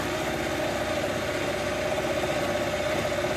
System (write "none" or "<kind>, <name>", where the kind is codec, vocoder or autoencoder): none